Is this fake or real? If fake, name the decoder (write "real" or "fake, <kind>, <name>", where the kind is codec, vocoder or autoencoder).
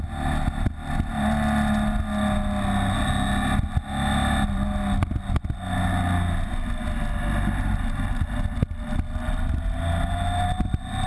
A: real